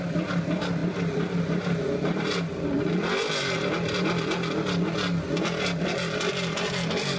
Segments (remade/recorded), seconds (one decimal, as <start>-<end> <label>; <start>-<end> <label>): 0.0-7.2 recorded